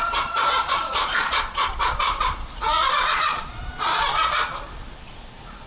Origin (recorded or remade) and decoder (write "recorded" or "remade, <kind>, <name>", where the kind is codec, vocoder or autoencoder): remade, vocoder, Vocos